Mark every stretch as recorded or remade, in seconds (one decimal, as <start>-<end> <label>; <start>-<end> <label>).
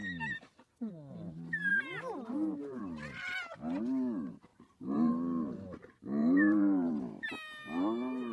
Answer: 0.0-1.7 recorded; 1.7-2.8 remade; 2.8-4.5 recorded; 4.5-5.1 remade; 5.1-6.2 recorded; 6.2-7.0 remade; 7.0-8.3 recorded